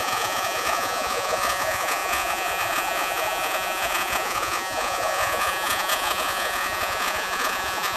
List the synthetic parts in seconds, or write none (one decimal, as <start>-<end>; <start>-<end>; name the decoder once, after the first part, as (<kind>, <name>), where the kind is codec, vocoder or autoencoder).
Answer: 0.0-8.0 (vocoder, Vocos)